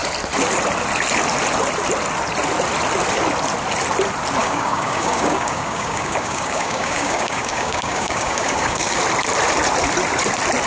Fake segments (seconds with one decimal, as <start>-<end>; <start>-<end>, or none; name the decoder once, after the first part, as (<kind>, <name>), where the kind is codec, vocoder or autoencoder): 4.4-9.0 (codec, DAC)